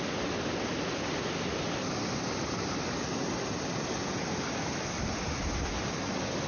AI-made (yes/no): no